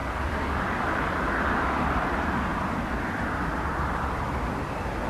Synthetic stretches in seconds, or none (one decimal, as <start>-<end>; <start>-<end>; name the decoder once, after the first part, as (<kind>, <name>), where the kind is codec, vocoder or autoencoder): none